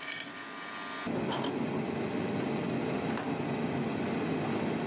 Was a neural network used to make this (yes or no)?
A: no